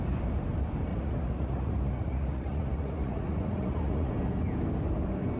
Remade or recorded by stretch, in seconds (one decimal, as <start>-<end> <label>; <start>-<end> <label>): 0.0-0.9 recorded; 0.9-4.1 remade; 4.1-5.4 recorded